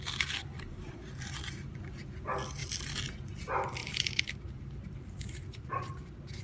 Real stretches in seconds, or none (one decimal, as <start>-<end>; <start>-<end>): 0.0-0.5; 1.2-3.8; 5.8-6.4